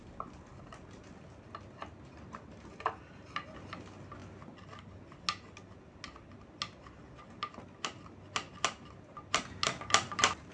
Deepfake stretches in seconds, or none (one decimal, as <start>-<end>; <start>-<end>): none